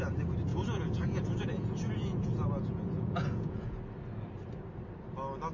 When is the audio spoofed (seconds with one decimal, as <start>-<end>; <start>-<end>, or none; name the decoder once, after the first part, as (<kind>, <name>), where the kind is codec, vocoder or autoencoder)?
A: 0.5-3.8 (vocoder, Vocos)

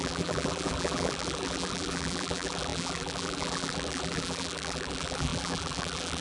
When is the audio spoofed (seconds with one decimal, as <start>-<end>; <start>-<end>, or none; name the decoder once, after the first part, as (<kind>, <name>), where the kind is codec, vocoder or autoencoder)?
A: 0.0-6.2 (vocoder, BigVGAN v2)